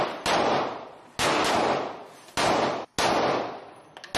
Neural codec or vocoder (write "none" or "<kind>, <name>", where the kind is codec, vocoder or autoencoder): none